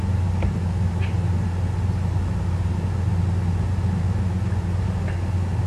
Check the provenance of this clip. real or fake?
real